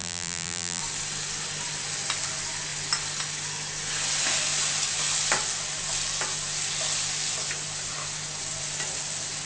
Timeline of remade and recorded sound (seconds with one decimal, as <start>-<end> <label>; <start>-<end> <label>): 0.0-0.8 remade; 0.8-9.5 recorded